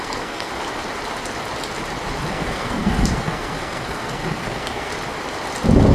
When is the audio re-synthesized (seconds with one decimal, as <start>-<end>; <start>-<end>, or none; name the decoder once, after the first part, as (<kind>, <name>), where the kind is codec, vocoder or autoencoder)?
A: 0.0-0.5 (codec, SNAC); 2.3-4.9